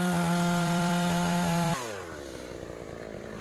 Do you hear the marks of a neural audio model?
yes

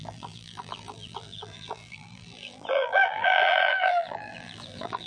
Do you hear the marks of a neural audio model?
yes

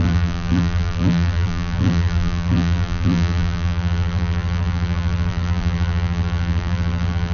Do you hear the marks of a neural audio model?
yes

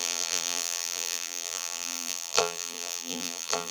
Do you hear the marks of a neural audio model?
yes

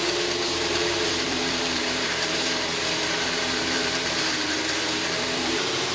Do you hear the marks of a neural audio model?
yes